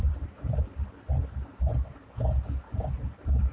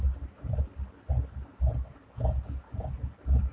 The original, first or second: second